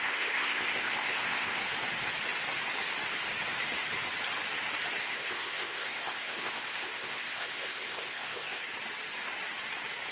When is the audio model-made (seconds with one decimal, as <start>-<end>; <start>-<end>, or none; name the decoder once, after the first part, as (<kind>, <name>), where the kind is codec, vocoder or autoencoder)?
0.0-1.6 (codec, ZipCodec); 5.0-8.6